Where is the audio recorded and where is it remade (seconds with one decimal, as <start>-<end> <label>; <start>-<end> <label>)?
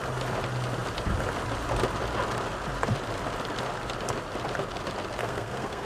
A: 0.0-5.2 recorded; 5.2-5.9 remade